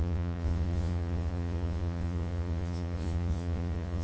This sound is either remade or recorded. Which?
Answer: remade